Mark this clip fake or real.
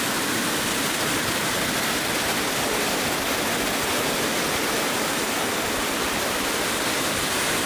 real